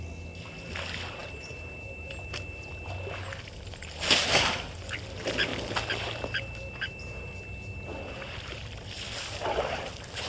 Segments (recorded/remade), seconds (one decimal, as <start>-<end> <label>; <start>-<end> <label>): 0.0-10.3 recorded